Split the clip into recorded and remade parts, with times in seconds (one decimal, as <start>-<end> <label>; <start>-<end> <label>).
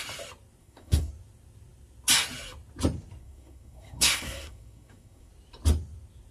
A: 0.0-0.6 recorded; 0.6-1.1 remade; 1.1-3.2 recorded; 3.2-5.3 remade; 5.3-6.3 recorded